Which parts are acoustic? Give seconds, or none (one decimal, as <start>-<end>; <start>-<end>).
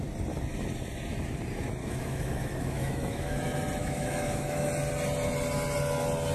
0.0-1.8; 3.4-3.8; 4.7-6.3